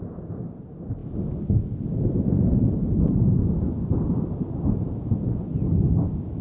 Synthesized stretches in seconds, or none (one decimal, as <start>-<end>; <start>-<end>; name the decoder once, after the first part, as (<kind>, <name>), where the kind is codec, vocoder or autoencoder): 1.0-4.8 (vocoder, BigVGAN v2)